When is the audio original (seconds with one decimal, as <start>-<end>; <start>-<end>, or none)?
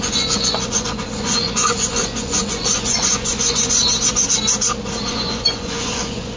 3.8-5.1